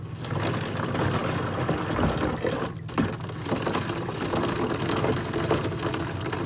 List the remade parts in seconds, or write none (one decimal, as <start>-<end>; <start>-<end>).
none